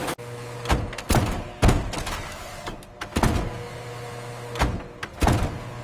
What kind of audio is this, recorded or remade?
recorded